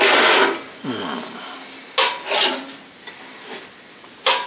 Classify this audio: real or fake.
real